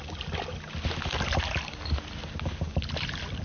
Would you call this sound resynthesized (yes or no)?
no